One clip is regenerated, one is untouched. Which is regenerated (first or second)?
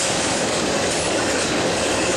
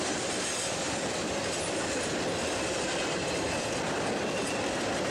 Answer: first